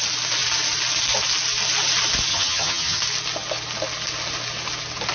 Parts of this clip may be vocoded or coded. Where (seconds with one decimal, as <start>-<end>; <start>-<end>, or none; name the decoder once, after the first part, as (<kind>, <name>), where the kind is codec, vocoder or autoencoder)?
2.3-3.0 (vocoder, HiFi-GAN)